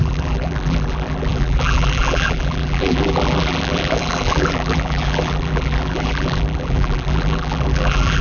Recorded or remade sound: remade